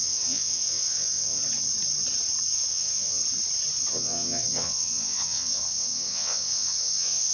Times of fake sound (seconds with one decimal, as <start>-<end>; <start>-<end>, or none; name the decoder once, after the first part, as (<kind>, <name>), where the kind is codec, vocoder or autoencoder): 0.0-1.4 (vocoder, WaveNeXt); 2.7-3.2; 3.9-7.3